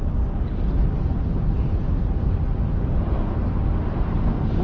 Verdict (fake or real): real